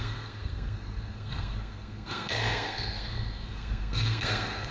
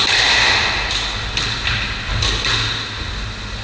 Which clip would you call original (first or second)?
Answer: second